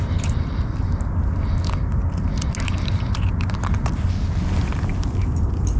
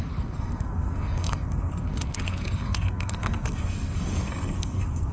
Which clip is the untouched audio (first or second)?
first